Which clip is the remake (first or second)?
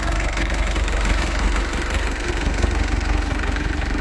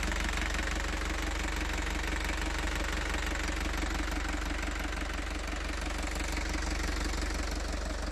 first